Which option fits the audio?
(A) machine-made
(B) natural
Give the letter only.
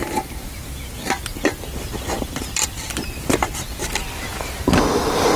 A